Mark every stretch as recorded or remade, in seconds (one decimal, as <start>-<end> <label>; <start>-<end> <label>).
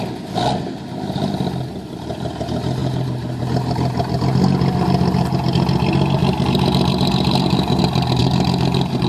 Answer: 0.0-2.8 recorded; 2.8-3.4 remade; 3.4-6.2 recorded; 6.2-7.8 remade; 7.8-8.2 recorded; 8.2-9.1 remade